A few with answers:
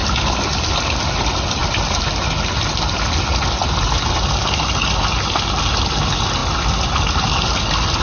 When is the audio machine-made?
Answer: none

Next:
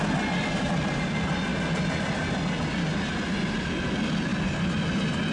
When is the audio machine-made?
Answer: none

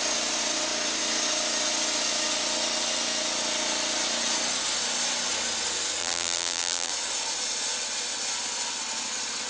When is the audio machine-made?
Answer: 6.0-6.9 (vocoder, BigVGAN v2)

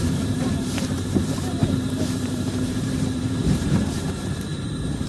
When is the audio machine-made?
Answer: 0.0-5.1 (vocoder, BigVGAN v2)

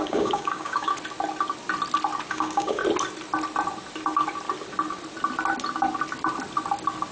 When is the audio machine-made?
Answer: 0.0-0.9 (codec, DAC); 2.3-2.8

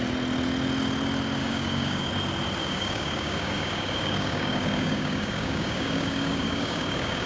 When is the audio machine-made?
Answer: 1.4-2.1 (codec, DAC); 2.6-7.3

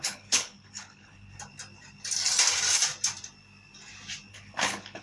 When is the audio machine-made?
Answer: 0.0-1.3 (codec, HILCodec); 4.3-5.0